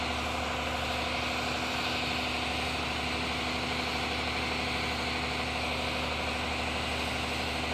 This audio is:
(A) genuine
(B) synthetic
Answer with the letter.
A